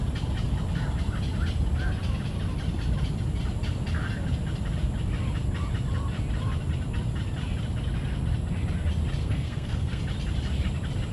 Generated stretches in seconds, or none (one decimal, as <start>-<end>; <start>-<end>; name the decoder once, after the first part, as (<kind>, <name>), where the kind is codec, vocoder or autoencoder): 9.2-10.0 (codec, SNAC)